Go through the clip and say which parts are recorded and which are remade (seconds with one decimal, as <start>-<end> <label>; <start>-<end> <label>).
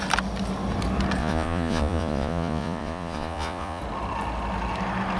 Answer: 0.0-1.2 recorded; 1.2-3.8 remade; 3.8-5.2 recorded